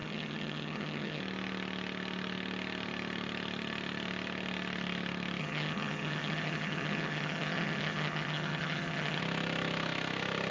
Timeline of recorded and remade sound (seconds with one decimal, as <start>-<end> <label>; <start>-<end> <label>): 0.0-1.2 remade; 1.2-5.4 recorded; 5.4-9.2 remade; 9.2-10.5 recorded